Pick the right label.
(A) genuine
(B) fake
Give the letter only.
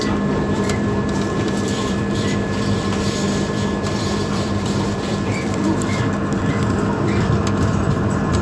B